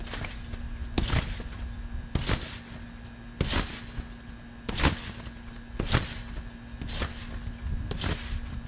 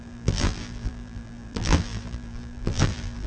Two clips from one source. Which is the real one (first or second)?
first